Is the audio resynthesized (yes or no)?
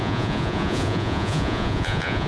yes